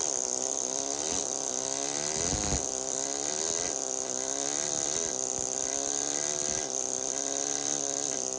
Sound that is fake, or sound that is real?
real